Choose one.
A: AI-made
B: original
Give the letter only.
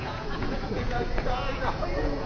A